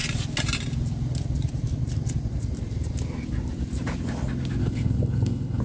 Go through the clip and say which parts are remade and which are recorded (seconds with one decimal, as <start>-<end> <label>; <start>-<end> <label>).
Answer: 0.0-4.6 recorded; 4.6-5.6 remade